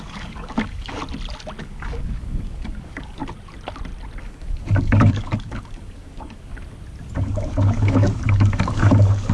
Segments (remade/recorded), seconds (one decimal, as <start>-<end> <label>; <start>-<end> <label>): 0.0-1.0 remade; 1.0-1.6 recorded; 1.6-3.2 remade; 3.2-4.2 recorded; 4.2-6.5 remade; 6.5-7.2 recorded; 7.2-9.3 remade

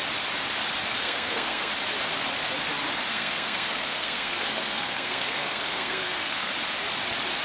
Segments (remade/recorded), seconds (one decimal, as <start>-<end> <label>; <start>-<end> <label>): 0.0-0.9 recorded; 0.9-1.7 remade; 1.7-3.1 recorded; 3.1-6.5 remade; 6.5-7.4 recorded

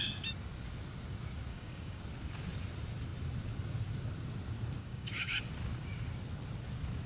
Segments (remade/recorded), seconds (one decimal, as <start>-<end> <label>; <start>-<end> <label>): 0.0-1.5 recorded; 1.5-2.0 remade; 2.0-4.8 recorded; 4.8-5.4 remade; 5.4-7.1 recorded

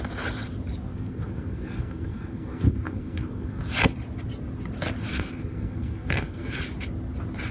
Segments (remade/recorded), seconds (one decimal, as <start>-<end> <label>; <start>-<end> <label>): 0.0-0.9 recorded; 0.9-3.6 remade; 3.6-5.1 recorded; 5.1-6.6 remade; 6.6-7.5 recorded

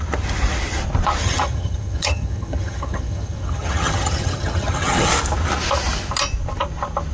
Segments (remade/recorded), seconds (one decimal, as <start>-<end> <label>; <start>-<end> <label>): 0.0-1.2 recorded; 1.2-5.1 remade; 5.1-7.1 recorded

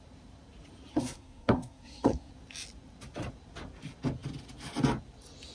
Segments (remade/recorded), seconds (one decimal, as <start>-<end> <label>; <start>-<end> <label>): 0.0-0.9 recorded; 0.9-2.3 remade; 2.3-5.5 recorded